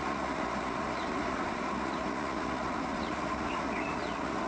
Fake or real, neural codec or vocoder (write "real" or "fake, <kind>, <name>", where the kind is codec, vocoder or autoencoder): fake, vocoder, Vocos